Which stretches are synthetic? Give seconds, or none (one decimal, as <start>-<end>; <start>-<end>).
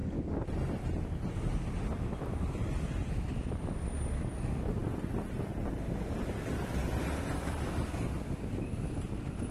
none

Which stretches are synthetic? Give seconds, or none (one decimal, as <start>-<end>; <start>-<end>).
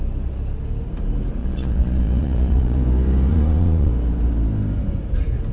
1.4-2.8; 3.3-3.9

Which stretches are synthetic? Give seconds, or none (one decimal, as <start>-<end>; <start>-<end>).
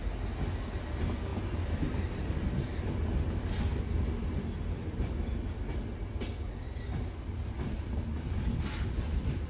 none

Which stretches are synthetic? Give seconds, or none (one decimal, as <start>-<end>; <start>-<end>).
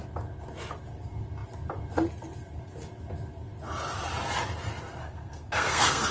5.0-6.1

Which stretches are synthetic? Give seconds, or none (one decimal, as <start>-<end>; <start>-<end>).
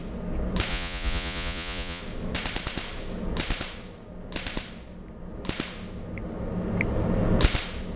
0.7-2.0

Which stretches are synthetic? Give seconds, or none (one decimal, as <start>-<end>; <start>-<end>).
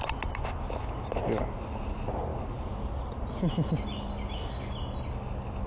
none